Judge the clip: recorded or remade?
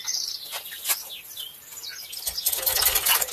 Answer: recorded